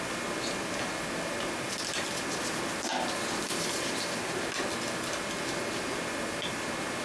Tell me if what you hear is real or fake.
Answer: real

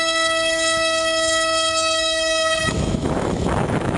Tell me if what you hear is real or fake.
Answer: fake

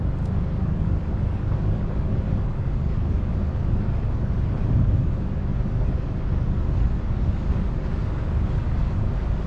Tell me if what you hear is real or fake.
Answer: fake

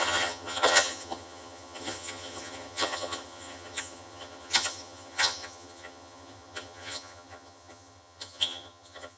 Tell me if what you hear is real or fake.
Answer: fake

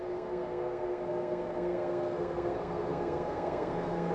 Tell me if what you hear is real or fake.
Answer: fake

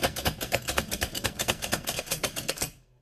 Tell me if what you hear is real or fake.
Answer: fake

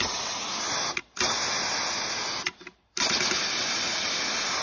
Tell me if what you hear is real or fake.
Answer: real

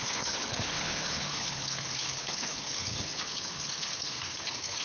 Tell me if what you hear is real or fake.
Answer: fake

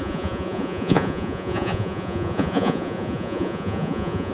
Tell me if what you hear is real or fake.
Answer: fake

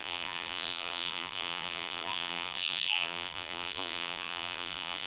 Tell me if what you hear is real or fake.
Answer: fake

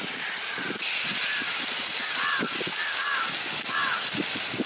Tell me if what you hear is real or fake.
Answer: real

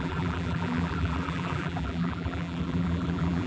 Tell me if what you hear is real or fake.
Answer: fake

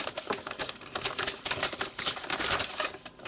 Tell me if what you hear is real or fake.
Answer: real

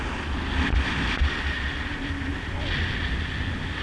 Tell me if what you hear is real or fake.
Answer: real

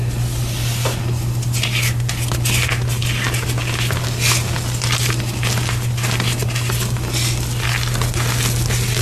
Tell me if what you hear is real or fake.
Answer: real